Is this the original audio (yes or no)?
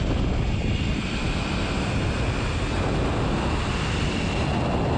yes